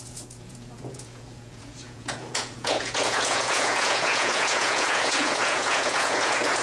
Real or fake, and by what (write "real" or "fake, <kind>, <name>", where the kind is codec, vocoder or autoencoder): fake, vocoder, Vocos